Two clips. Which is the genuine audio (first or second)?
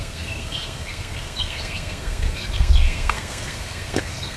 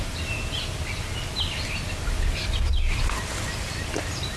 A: second